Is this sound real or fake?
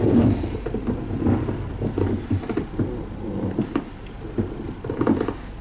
real